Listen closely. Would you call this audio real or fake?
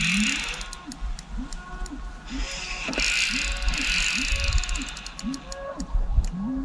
real